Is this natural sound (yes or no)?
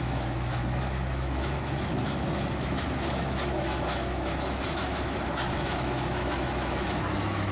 no